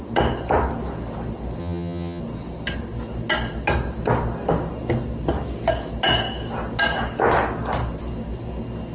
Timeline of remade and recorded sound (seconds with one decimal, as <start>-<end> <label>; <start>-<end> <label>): 0.0-1.6 recorded; 1.6-2.2 remade; 2.2-8.9 recorded